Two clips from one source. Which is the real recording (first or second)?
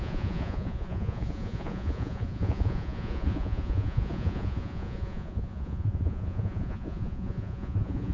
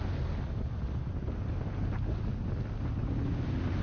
second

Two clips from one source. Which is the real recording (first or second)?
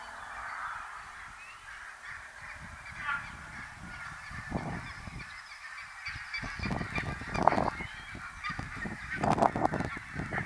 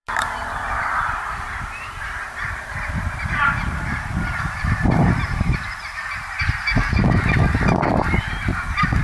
first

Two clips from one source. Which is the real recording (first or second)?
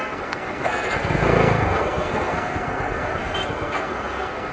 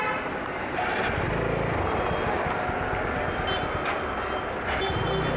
second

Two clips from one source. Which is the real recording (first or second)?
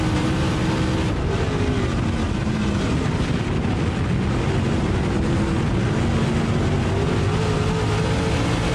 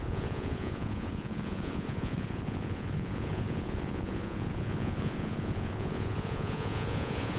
first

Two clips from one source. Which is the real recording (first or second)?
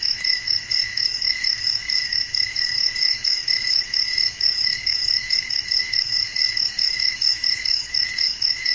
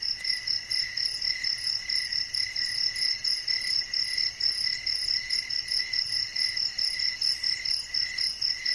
second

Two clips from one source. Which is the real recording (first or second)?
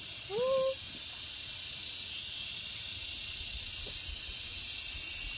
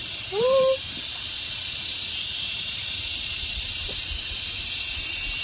first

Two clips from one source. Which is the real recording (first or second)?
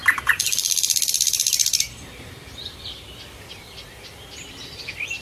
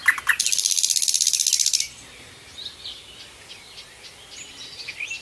second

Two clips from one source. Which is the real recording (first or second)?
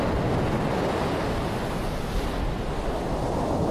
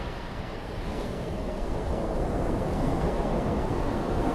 first